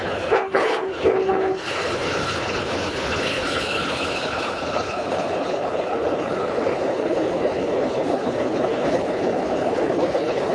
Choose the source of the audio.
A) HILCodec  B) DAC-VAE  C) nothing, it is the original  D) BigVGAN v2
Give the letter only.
A